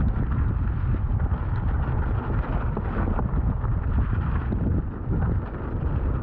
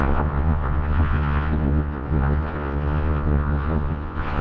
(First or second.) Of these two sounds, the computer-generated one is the second